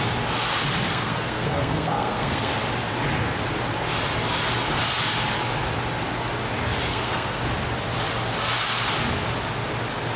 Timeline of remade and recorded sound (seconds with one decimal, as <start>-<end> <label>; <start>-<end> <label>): 0.0-0.9 recorded; 0.9-2.5 remade; 2.5-6.9 recorded; 6.9-7.4 remade; 7.4-10.2 recorded